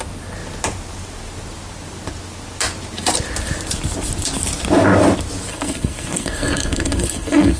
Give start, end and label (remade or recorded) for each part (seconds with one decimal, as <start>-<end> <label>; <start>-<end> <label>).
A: 0.0-5.5 recorded; 5.5-7.6 remade